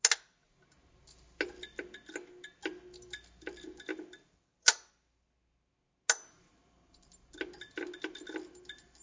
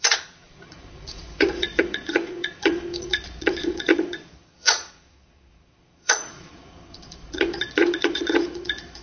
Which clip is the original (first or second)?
first